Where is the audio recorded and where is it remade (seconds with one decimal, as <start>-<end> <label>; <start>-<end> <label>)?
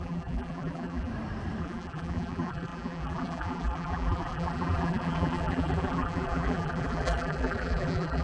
0.0-1.1 remade; 1.1-1.6 recorded; 1.6-8.2 remade